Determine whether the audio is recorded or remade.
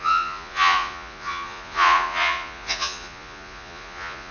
remade